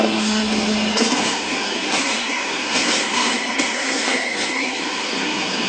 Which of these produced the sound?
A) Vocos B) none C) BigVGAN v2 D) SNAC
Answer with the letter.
D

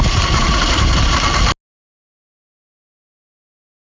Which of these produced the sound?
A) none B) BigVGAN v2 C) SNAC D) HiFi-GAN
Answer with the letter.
A